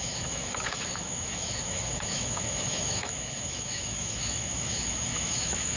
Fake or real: fake